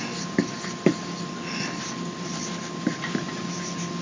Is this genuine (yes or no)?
yes